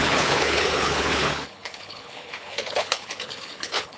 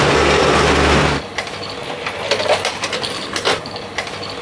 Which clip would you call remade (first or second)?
first